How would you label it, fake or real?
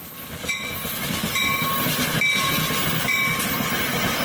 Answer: real